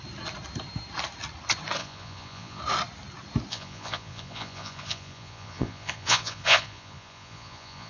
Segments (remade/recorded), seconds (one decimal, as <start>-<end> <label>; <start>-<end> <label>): 0.0-1.8 recorded; 1.8-2.6 remade; 2.6-3.5 recorded; 3.5-7.9 remade